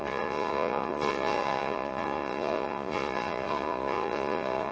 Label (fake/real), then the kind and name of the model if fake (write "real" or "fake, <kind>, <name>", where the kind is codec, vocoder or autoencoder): fake, vocoder, Vocos